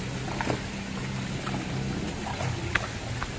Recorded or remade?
recorded